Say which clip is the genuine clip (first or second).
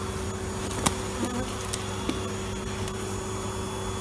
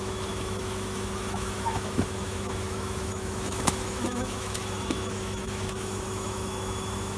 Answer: first